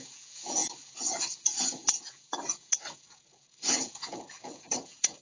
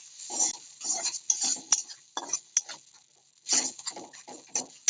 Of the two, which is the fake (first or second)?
first